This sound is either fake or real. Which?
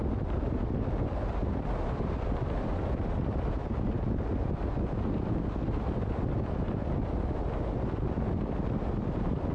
real